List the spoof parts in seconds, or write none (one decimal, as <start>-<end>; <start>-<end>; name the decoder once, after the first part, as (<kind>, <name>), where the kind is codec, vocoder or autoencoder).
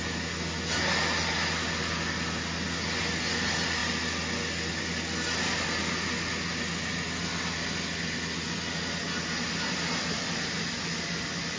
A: none